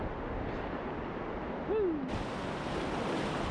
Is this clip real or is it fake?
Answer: real